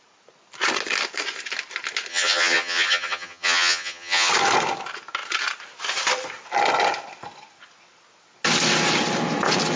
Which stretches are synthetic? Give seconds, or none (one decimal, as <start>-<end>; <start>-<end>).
2.1-4.3